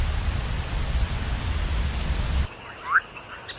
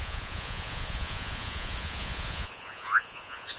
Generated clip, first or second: second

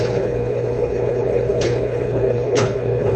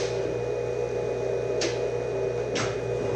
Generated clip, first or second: first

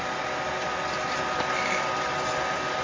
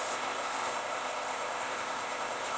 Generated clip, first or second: second